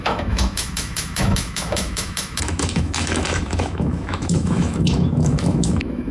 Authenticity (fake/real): fake